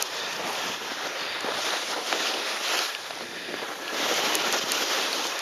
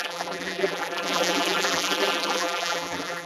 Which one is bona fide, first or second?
first